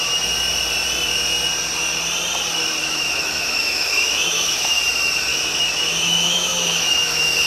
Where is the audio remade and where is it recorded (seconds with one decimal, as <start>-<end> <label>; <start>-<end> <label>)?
0.0-2.8 recorded; 2.8-4.8 remade; 4.8-5.3 recorded; 5.3-7.5 remade